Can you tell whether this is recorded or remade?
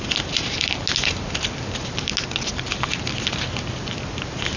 recorded